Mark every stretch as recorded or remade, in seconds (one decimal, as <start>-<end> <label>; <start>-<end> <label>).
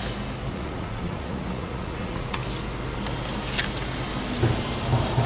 0.0-0.5 recorded; 0.5-2.4 remade; 2.4-5.3 recorded